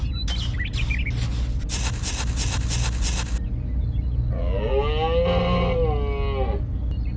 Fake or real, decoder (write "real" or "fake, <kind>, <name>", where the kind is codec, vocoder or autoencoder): real